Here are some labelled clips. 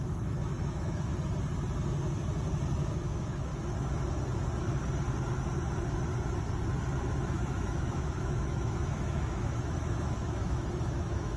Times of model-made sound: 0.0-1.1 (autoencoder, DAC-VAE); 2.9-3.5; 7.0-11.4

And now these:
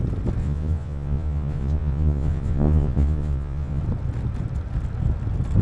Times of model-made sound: 0.4-3.8 (vocoder, Vocos)

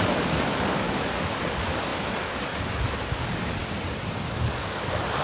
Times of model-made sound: 0.0-3.6 (codec, DAC); 4.2-5.2